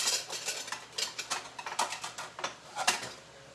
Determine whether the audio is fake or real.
real